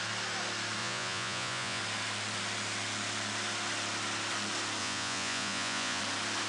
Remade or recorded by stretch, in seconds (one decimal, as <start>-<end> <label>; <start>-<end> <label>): 0.0-0.8 recorded; 0.8-1.8 remade; 1.8-4.8 recorded; 4.8-6.0 remade; 6.0-6.5 recorded